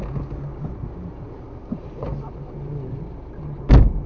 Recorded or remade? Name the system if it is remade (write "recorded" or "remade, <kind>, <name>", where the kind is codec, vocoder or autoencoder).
recorded